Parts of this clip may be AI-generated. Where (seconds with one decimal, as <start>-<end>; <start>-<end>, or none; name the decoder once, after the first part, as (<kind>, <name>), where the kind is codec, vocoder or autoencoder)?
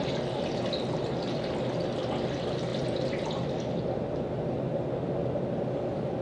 none